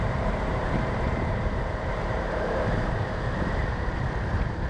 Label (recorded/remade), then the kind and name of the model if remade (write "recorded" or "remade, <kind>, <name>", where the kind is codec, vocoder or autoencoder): remade, vocoder, BigVGAN v2